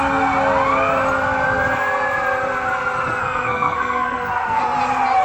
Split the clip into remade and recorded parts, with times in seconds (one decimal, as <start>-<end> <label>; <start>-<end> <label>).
0.0-3.2 recorded; 3.2-4.6 remade; 4.6-5.2 recorded